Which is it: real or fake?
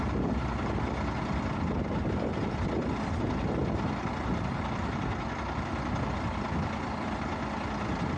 real